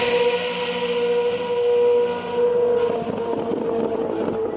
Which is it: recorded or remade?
recorded